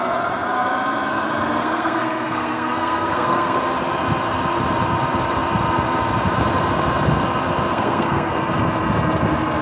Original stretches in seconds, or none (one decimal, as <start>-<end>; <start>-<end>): 0.0-1.6; 3.6-7.7; 8.3-9.6

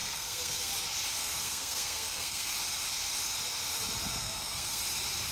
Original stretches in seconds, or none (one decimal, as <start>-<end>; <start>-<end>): 0.7-1.2; 2.5-4.1; 4.8-5.3

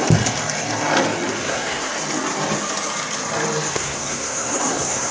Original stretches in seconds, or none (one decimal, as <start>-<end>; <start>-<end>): 0.0-1.4; 1.9-3.7